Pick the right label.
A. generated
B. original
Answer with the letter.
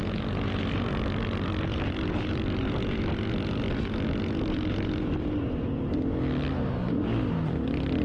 B